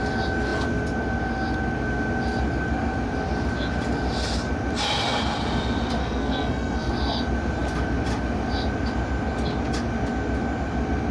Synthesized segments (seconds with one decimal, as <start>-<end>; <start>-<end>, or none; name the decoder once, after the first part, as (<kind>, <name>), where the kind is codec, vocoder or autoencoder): 6.0-6.9 (codec, SNAC)